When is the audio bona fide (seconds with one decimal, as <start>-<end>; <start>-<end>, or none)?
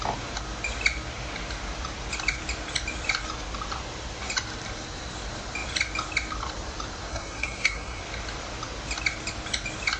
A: 0.0-7.1; 8.0-10.0